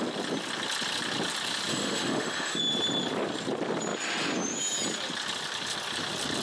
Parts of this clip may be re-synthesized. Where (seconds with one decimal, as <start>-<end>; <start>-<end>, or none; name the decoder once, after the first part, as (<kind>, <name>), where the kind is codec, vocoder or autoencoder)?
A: 1.7-2.6 (autoencoder, DAC-VAE)